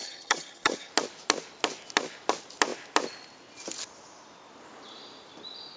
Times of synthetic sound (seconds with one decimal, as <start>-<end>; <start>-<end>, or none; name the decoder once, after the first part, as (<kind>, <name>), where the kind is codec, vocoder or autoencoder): 0.0-0.9 (vocoder, HiFi-GAN)